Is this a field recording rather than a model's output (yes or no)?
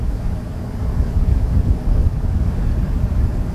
no